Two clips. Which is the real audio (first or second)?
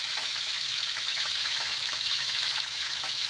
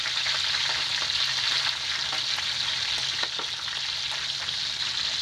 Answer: second